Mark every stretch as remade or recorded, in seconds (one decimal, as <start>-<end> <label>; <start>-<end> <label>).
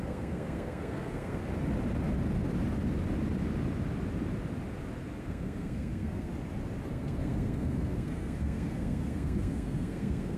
0.0-1.4 remade; 1.4-5.2 recorded; 5.2-6.3 remade; 6.3-6.9 recorded; 6.9-10.4 remade